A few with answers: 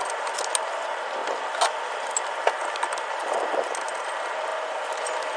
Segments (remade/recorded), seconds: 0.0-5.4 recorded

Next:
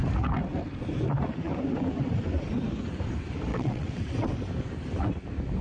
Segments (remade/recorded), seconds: 0.0-3.5 recorded; 3.5-4.0 remade; 4.0-5.6 recorded

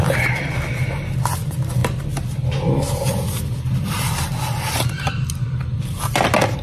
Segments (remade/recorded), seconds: 0.0-6.6 recorded

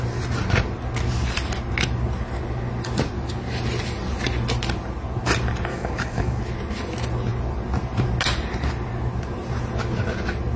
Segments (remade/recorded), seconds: 0.0-5.7 recorded; 5.7-6.4 remade; 6.4-10.6 recorded

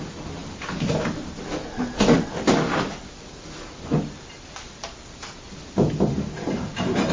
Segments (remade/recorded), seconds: 0.0-7.1 recorded

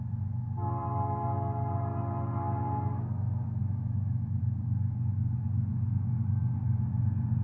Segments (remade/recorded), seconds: 0.0-3.6 recorded; 3.6-4.4 remade; 4.4-7.4 recorded